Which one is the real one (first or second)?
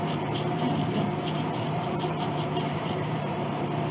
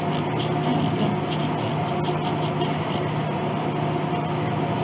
second